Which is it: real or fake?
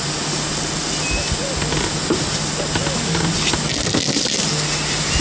real